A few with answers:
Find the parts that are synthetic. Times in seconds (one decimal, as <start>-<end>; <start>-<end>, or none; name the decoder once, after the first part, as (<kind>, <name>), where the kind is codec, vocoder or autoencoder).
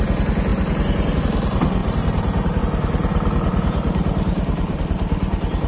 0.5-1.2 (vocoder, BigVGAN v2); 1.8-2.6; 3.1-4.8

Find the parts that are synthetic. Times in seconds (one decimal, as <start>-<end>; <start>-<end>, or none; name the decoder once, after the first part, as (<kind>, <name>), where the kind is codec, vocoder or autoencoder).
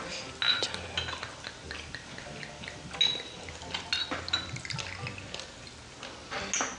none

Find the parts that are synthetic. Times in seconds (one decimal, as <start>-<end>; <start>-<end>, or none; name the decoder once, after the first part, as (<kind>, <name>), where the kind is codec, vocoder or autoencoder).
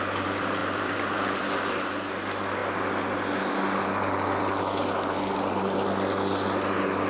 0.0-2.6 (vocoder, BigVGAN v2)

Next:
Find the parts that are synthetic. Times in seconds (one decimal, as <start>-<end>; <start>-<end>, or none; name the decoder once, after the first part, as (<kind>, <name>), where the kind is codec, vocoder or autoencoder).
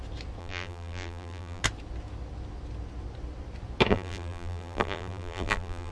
0.4-1.6 (vocoder, BigVGAN v2); 3.9-5.9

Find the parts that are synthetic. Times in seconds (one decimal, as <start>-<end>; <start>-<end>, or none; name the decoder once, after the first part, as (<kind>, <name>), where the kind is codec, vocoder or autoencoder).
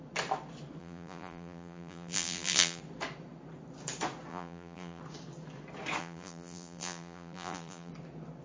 0.8-2.8 (vocoder, BigVGAN v2); 4.3-5.0; 6.0-7.9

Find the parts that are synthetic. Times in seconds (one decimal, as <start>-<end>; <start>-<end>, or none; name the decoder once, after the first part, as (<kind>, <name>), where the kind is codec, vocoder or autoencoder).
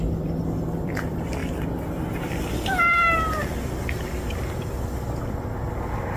0.0-1.4 (vocoder, BigVGAN v2); 2.5-3.4; 5.5-6.2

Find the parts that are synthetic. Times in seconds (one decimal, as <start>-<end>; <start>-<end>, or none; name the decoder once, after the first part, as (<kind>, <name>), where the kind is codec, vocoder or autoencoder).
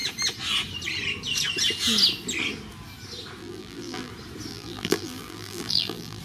3.4-4.1 (vocoder, BigVGAN v2); 4.5-6.2